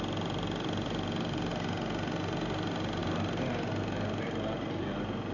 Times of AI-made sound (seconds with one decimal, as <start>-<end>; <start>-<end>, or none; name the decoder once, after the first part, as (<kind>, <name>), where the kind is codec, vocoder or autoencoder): none